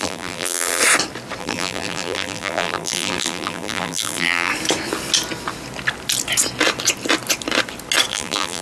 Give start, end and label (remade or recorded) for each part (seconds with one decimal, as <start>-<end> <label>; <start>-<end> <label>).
0.0-0.8 remade; 0.8-1.4 recorded; 1.4-4.5 remade; 4.5-8.1 recorded; 8.1-8.6 remade